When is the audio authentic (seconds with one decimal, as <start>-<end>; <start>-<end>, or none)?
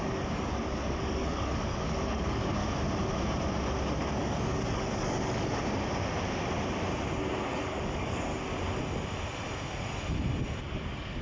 2.6-4.0; 5.5-7.5; 8.3-10.6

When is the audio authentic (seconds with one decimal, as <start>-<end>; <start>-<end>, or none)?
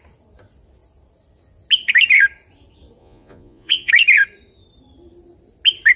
0.0-3.0; 3.9-6.0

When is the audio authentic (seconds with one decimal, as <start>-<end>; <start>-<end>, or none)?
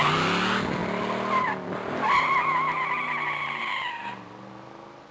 0.0-5.1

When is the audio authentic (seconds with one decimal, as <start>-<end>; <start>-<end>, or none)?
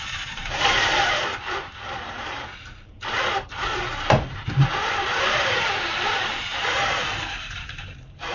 none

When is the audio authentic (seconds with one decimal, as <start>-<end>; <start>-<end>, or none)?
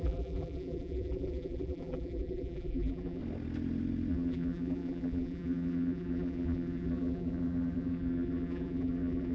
3.2-4.1